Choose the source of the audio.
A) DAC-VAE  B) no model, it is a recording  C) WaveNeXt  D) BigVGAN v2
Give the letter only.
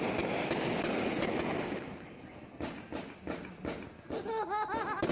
B